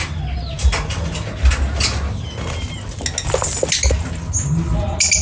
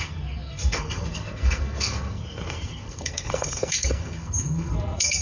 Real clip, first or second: first